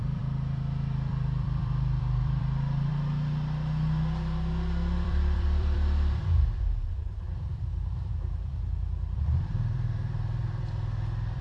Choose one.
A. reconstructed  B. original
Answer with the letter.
A